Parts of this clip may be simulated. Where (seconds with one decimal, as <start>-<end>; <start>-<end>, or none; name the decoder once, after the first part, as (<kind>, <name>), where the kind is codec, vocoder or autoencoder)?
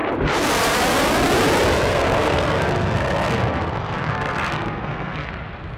1.9-5.3 (codec, SNAC)